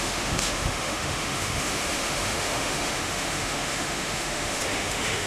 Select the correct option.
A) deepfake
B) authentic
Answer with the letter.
A